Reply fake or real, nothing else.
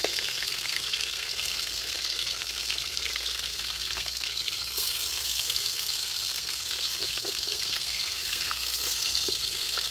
fake